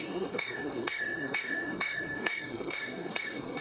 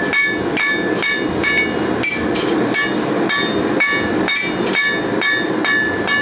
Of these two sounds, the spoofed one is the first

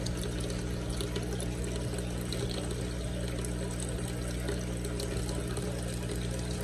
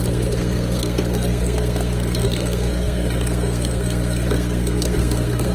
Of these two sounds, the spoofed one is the second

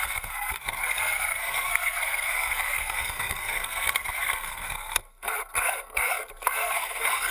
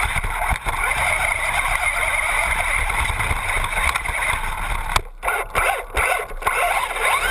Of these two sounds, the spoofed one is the first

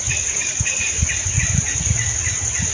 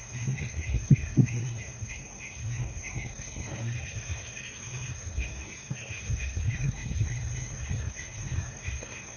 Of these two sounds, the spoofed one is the second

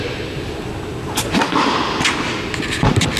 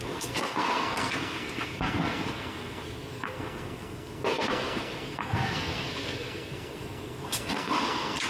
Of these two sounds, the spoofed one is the second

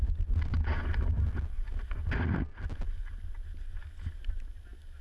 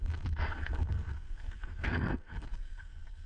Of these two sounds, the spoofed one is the second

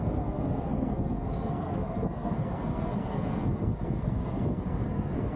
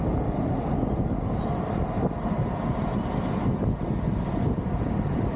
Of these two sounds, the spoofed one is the first